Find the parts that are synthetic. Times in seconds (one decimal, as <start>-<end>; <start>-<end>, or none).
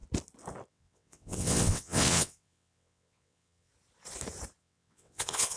0.7-3.7; 4.6-5.6